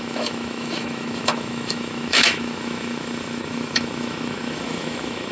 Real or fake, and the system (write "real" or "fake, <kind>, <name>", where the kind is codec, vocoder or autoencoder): fake, autoencoder, DAC-VAE